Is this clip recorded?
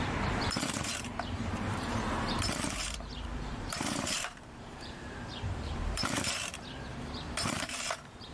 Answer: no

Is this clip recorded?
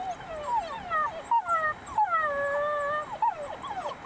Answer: yes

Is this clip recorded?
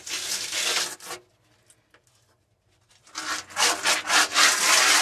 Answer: yes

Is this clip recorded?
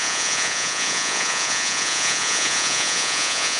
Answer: no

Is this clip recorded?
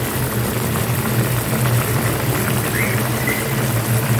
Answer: no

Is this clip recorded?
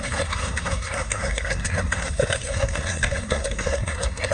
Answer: no